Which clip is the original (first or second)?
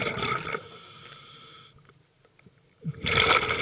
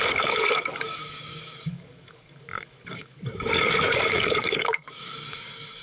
first